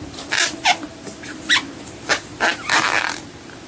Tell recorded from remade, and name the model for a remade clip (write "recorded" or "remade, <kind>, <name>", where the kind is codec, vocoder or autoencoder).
recorded